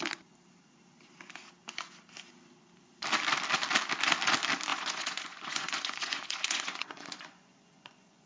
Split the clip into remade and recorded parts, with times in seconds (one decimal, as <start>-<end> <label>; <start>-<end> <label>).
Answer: 0.0-4.7 recorded; 4.7-8.3 remade